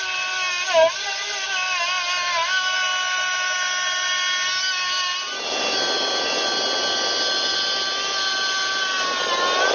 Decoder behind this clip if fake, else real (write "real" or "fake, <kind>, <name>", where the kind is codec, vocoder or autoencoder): real